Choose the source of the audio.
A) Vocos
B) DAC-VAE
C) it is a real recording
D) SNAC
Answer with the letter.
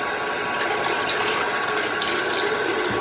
C